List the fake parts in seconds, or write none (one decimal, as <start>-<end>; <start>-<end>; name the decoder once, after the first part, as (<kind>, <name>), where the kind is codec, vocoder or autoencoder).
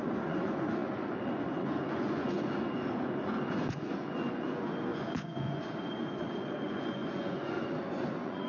0.0-8.5 (vocoder, Vocos)